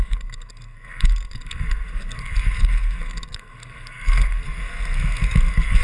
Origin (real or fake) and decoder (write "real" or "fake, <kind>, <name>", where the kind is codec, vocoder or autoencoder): fake, codec, SNAC